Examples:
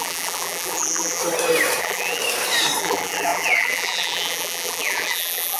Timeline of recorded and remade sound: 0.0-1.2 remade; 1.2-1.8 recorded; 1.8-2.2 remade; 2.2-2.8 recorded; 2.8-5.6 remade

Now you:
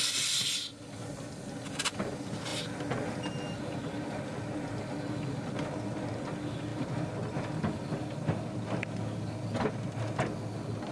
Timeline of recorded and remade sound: 0.0-10.9 recorded

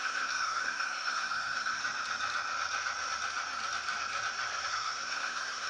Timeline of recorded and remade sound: 0.0-1.8 remade; 1.8-4.7 recorded; 4.7-5.7 remade

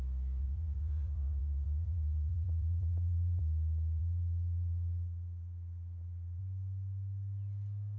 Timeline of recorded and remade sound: 0.0-0.4 recorded; 0.4-3.4 remade; 3.4-4.0 recorded; 4.0-6.4 remade; 6.4-8.0 recorded

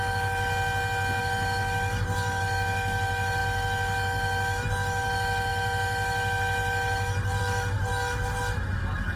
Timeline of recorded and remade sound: 0.0-0.5 remade; 0.5-1.2 recorded; 1.2-9.2 remade

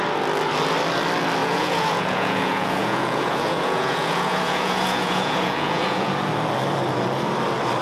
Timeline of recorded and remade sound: 0.0-1.4 recorded; 1.4-6.1 remade; 6.1-7.8 recorded

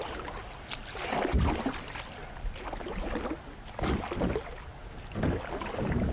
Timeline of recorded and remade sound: 0.0-6.1 recorded